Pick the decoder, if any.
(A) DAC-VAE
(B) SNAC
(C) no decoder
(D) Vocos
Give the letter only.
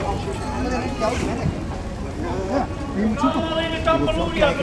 C